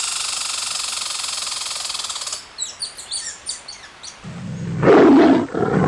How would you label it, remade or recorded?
recorded